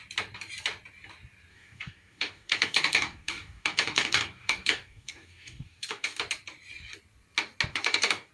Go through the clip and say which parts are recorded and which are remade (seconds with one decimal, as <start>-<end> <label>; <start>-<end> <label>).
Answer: 0.0-1.5 recorded; 1.5-6.2 remade; 6.2-7.7 recorded; 7.7-8.3 remade